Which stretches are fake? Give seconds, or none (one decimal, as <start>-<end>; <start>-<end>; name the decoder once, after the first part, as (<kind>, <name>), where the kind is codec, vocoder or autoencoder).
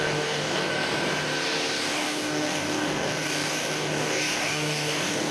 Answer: 0.0-0.7 (codec, DAC); 1.9-5.3